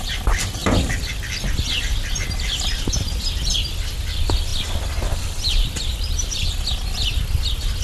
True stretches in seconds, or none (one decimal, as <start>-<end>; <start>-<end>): 0.0-7.8